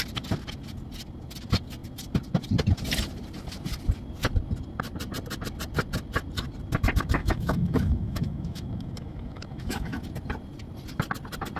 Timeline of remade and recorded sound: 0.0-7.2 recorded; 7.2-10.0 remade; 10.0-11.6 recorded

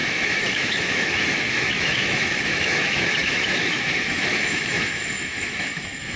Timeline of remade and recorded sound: 0.0-6.2 remade